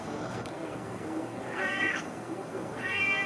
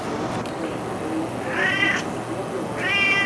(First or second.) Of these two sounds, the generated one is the first